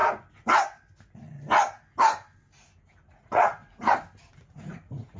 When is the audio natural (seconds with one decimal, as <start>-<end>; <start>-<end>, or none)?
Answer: 0.0-3.1; 3.6-4.4